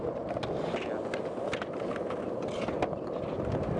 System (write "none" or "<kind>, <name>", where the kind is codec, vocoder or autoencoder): none